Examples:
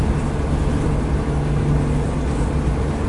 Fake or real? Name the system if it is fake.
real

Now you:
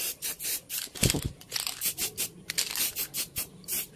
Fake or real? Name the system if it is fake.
real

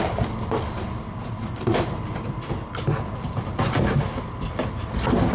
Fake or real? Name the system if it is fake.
real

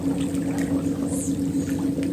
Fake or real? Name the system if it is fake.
real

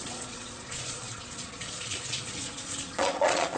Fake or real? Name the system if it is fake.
fake, vocoder, Vocos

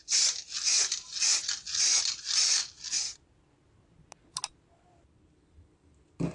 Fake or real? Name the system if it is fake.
real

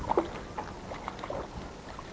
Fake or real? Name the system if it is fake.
real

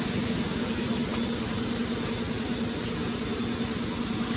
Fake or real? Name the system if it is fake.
real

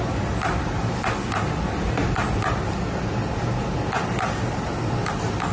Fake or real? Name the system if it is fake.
real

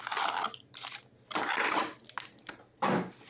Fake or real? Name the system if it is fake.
real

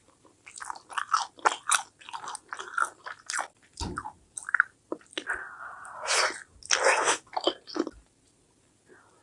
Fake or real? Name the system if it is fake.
real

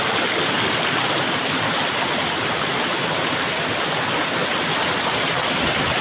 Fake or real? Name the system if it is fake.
real